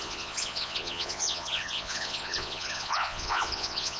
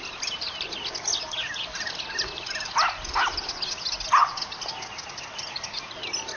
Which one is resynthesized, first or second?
first